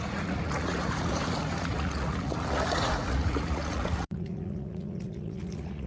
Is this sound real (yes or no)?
no